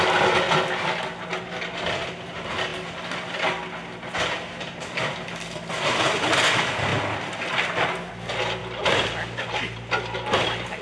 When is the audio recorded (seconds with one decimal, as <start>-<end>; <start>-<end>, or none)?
0.0-10.8